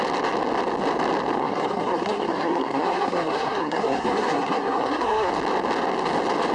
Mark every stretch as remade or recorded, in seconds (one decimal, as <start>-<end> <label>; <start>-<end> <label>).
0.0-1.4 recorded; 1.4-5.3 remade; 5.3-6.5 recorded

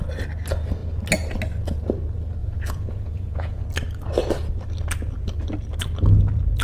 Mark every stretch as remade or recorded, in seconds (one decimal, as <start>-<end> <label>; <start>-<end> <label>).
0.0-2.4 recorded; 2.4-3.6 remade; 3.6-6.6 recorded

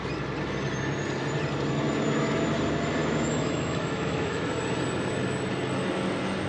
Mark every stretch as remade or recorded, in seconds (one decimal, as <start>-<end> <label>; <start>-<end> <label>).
0.0-3.0 recorded; 3.0-4.5 remade; 4.5-6.5 recorded

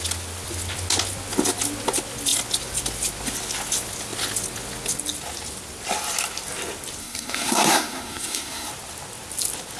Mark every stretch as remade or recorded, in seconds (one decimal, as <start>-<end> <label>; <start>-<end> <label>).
0.0-7.0 recorded; 7.0-8.7 remade; 8.7-9.8 recorded